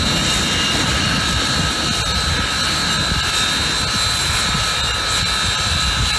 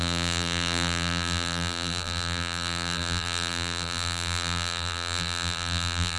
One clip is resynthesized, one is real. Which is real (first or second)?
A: first